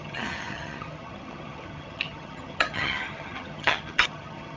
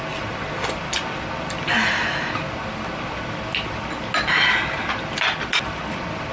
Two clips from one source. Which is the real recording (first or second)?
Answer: second